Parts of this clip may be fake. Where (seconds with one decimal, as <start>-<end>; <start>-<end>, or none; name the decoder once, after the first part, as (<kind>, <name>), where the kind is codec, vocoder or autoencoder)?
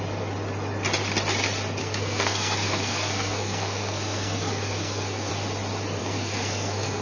1.8-5.3 (codec, SNAC); 6.0-7.0